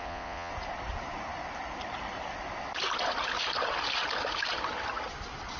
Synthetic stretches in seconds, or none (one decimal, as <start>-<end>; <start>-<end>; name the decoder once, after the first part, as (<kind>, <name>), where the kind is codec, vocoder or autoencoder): 0.0-0.5 (vocoder, Vocos)